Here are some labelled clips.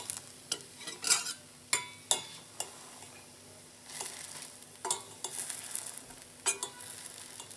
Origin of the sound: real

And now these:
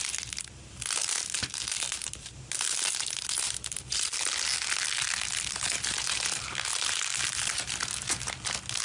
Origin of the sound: real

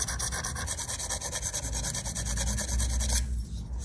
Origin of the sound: real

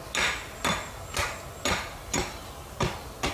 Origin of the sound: real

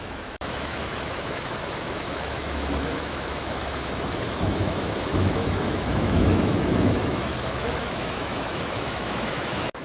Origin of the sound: fake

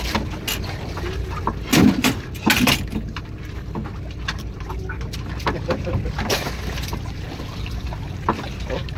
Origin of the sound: real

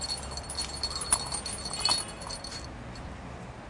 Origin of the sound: real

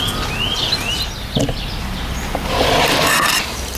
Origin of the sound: real